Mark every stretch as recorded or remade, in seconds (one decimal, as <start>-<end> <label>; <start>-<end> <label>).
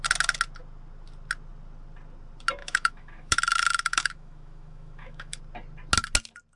0.0-2.6 recorded; 2.6-5.4 remade; 5.4-6.6 recorded